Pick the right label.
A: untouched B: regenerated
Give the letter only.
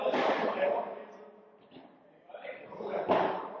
A